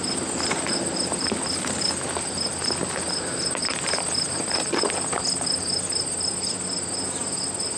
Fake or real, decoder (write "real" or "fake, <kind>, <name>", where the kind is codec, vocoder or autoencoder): real